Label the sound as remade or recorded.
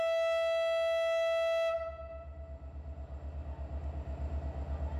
recorded